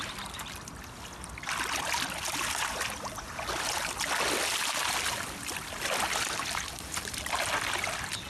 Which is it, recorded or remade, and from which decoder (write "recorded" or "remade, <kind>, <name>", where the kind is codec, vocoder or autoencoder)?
recorded